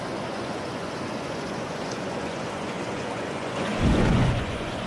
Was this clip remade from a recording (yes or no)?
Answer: yes